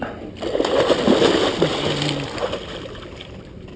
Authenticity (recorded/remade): recorded